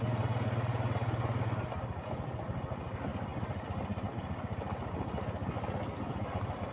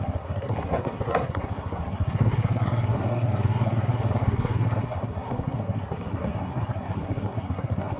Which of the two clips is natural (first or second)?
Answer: first